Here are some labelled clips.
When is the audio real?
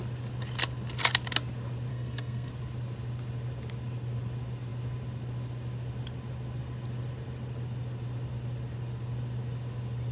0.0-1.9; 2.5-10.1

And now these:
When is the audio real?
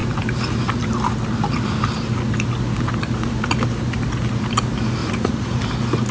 0.0-5.0; 5.6-6.1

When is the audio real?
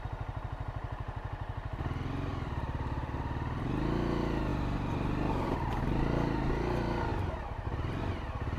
0.0-2.3; 3.1-4.5; 5.7-8.6